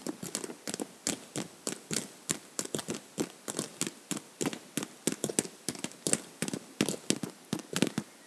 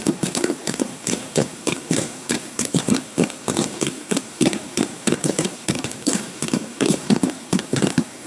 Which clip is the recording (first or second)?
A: first